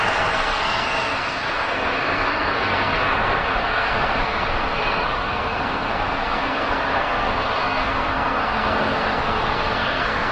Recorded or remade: remade